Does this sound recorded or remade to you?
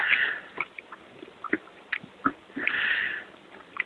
recorded